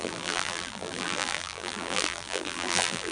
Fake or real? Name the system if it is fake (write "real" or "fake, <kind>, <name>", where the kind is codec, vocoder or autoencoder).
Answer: fake, vocoder, BigVGAN v2